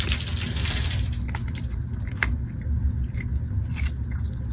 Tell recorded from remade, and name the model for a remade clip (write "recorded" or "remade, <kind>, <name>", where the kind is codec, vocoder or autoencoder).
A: recorded